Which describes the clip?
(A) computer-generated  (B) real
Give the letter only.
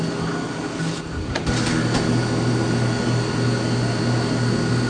B